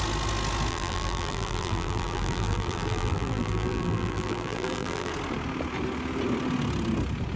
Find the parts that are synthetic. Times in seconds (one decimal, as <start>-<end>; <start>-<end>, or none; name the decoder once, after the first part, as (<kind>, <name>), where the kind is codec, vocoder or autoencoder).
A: 0.7-5.1 (vocoder, BigVGAN v2)